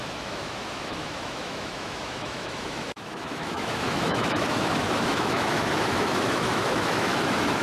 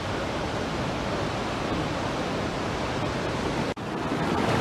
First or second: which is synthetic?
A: first